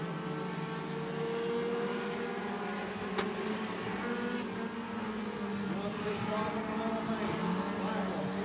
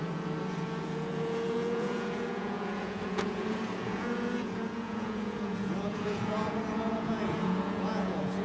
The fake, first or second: second